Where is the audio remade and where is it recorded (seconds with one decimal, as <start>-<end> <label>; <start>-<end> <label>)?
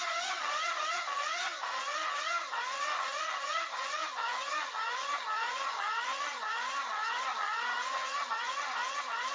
0.0-9.3 remade